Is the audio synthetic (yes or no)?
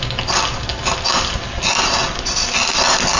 no